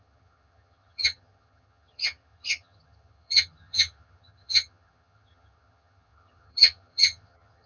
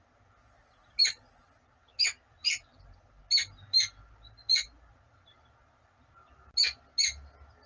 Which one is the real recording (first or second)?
second